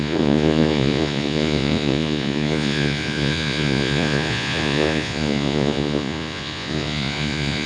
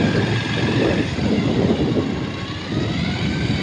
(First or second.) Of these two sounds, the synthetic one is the first